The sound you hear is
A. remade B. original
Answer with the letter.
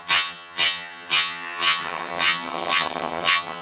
A